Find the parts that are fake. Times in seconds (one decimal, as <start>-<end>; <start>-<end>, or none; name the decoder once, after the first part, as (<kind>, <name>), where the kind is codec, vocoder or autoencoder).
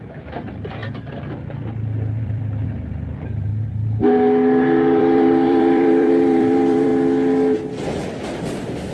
0.0-0.8 (vocoder, BigVGAN v2); 2.2-3.5; 5.0-6.9; 8.2-8.9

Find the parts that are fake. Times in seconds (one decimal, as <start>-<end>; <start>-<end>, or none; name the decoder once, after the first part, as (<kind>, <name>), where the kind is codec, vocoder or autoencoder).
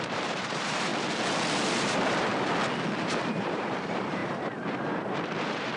0.0-0.9 (vocoder, BigVGAN v2); 1.7-2.3; 3.0-5.8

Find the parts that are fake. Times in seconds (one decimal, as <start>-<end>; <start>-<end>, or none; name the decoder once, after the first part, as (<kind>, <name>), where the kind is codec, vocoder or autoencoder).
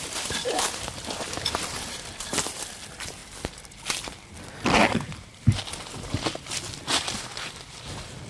0.0-3.2 (vocoder, BigVGAN v2); 6.8-8.3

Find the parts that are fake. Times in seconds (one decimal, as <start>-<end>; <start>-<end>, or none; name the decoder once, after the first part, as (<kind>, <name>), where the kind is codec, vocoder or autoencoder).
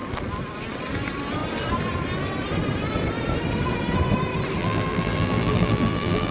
4.6-6.3 (vocoder, BigVGAN v2)